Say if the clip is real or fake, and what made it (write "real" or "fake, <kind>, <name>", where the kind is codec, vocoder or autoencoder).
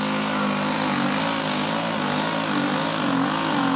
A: real